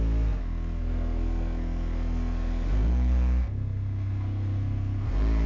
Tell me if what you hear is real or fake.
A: fake